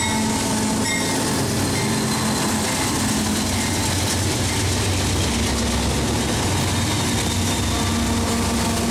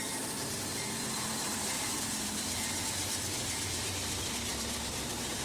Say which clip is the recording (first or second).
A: first